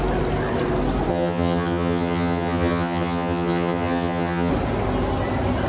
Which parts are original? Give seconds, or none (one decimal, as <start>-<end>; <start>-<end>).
0.0-1.1; 4.5-5.7